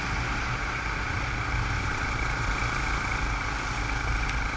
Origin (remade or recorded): recorded